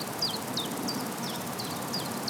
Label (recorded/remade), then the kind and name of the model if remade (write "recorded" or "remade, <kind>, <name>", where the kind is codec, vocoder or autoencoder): recorded